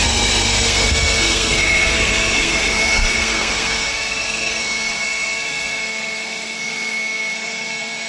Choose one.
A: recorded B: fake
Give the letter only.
B